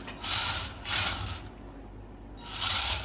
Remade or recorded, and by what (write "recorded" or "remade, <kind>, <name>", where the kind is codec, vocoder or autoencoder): recorded